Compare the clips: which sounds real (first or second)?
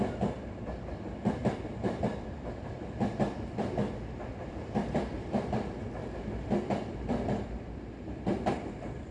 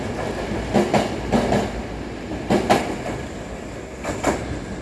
second